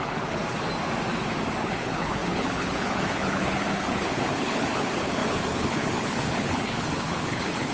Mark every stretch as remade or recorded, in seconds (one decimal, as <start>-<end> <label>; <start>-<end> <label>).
0.0-0.4 remade; 0.4-1.6 recorded; 1.6-7.7 remade